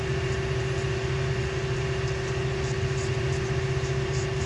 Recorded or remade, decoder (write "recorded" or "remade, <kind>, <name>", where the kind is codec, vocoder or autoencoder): recorded